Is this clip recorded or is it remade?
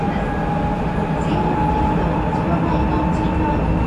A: recorded